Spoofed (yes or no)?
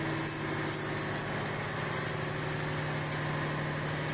no